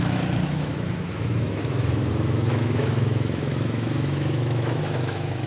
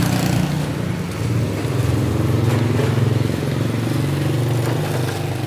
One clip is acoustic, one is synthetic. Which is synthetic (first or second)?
first